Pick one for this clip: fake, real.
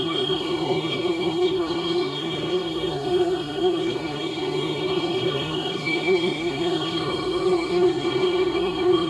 fake